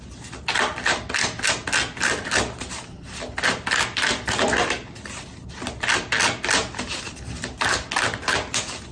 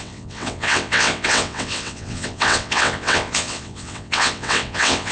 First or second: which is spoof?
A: second